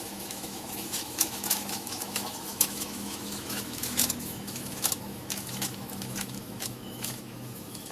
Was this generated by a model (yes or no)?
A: yes